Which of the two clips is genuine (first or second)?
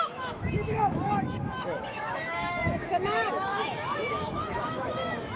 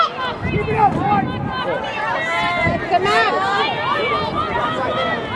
second